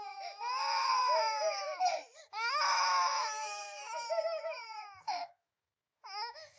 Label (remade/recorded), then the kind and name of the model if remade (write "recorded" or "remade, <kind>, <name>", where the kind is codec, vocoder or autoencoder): remade, autoencoder, DAC-VAE